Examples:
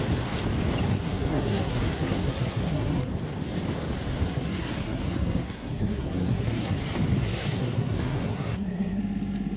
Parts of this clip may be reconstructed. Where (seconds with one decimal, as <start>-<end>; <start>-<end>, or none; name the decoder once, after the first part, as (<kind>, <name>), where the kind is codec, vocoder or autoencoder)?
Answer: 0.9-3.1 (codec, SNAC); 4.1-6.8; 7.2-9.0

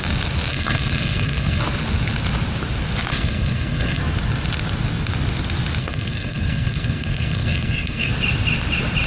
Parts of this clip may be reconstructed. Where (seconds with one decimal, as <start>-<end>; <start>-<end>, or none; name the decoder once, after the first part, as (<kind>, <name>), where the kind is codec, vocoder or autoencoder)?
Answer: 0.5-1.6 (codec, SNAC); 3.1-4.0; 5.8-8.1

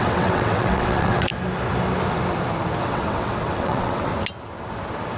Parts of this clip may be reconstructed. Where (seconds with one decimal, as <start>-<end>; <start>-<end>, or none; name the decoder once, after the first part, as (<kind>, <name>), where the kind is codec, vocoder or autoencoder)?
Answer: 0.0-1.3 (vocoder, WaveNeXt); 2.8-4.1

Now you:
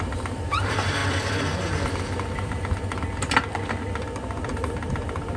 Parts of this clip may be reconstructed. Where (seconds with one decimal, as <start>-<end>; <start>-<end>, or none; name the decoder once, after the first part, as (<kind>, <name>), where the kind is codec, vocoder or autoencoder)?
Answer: 0.0-1.0 (vocoder, BigVGAN v2); 4.2-5.4

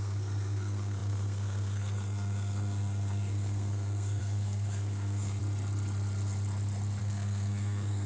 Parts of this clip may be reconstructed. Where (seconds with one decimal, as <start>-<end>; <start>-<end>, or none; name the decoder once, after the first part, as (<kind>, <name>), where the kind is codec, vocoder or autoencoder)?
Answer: 0.0-5.4 (codec, SNAC); 7.0-8.1

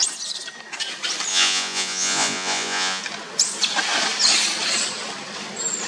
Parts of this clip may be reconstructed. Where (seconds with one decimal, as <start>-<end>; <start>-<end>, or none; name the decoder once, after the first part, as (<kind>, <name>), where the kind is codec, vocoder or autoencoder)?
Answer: 1.3-3.0 (vocoder, Vocos)

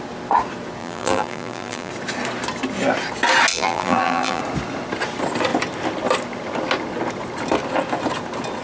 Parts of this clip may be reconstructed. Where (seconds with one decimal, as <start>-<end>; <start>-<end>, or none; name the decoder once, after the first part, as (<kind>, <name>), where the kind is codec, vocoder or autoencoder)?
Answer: 0.8-1.9 (vocoder, BigVGAN v2); 3.5-4.4